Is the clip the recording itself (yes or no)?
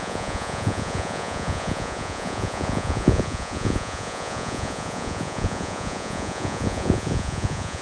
no